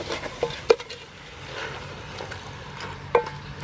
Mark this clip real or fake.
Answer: real